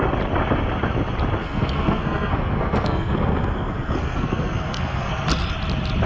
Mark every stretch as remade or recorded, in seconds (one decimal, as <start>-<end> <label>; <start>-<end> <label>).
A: 0.0-1.4 recorded; 1.4-5.1 remade; 5.1-6.1 recorded